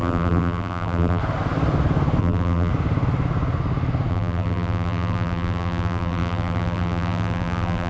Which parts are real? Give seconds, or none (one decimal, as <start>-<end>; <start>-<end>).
1.2-2.2; 2.7-4.1